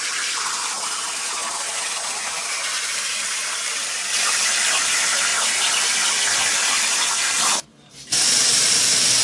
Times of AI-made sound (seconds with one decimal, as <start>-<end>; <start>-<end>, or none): 0.0-1.4; 2.8-5.3; 6.9-9.2